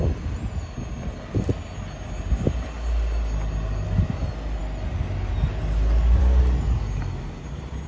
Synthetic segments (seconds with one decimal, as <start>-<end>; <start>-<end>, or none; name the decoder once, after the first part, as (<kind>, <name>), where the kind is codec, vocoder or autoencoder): none

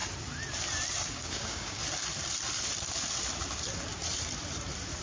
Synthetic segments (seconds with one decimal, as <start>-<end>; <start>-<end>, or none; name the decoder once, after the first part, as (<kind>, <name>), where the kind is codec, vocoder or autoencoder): 1.1-1.8 (codec, DAC)

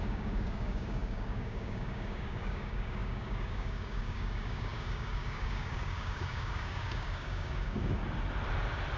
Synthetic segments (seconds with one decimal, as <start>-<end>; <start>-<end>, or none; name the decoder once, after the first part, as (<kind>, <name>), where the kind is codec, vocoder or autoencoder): 0.0-8.0 (codec, DAC)

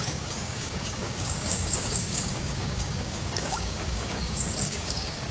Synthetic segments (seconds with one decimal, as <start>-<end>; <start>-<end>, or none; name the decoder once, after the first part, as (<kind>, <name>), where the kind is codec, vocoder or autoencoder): 0.0-5.3 (codec, DAC)

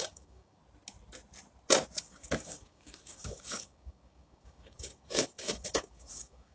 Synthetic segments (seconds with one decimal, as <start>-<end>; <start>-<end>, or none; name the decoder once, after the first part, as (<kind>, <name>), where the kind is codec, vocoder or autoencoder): 0.0-0.6 (codec, DAC); 2.0-6.5

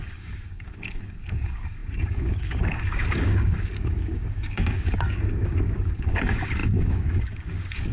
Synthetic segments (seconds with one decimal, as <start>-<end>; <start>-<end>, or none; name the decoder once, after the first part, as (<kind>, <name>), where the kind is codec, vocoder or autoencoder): 0.0-7.9 (codec, DAC)